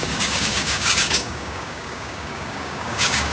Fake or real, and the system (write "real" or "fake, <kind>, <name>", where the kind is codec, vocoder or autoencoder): fake, codec, DAC